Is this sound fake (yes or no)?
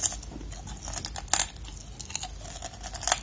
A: no